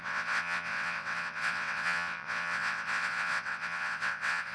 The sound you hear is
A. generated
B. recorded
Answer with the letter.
A